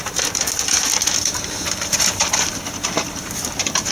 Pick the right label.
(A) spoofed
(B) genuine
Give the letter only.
A